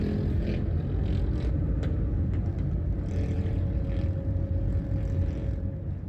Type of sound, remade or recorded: recorded